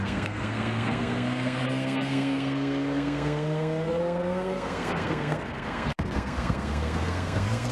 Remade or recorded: remade